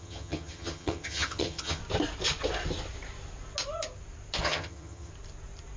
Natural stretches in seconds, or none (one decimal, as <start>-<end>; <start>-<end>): 1.8-4.4; 5.1-5.8